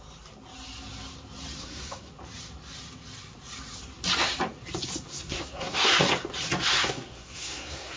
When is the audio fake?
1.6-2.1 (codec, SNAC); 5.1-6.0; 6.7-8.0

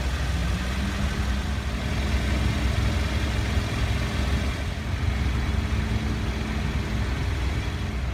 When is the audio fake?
none